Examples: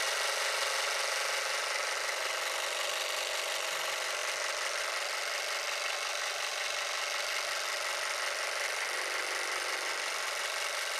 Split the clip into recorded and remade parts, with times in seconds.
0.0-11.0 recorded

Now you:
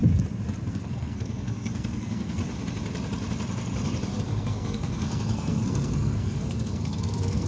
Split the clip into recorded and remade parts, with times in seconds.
0.0-0.7 recorded; 0.7-2.4 remade; 2.4-4.2 recorded; 4.2-7.5 remade